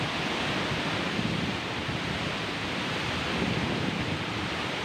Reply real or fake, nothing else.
fake